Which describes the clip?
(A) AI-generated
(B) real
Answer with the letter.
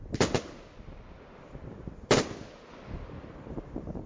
B